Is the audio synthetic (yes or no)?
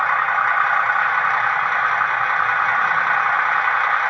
no